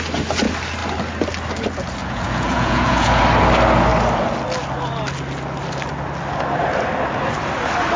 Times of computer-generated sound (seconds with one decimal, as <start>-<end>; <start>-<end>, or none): 2.0-3.2